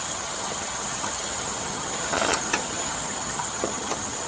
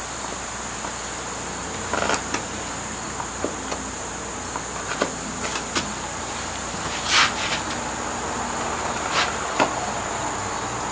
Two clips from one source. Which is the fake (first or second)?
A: first